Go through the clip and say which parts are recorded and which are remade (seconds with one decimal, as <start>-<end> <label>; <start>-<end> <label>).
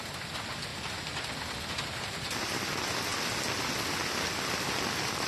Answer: 0.0-0.7 recorded; 0.7-1.4 remade; 1.4-5.3 recorded